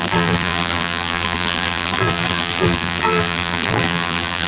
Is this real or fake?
fake